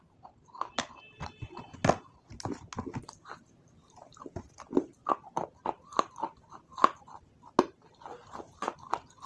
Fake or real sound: real